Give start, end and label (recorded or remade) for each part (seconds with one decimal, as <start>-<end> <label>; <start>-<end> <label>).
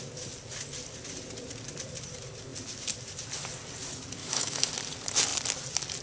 0.0-4.2 recorded; 4.2-4.7 remade; 4.7-6.0 recorded